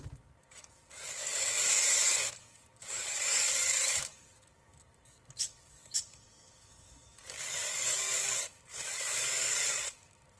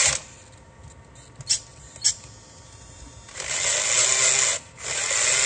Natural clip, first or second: second